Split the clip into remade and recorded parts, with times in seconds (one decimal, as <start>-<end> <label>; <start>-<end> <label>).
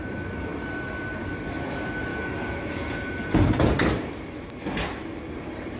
0.0-2.1 recorded; 2.1-3.7 remade; 3.7-5.8 recorded